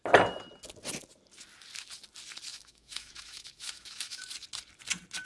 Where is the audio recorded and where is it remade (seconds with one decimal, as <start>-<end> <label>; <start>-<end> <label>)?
0.0-2.5 recorded; 2.5-4.3 remade; 4.3-5.3 recorded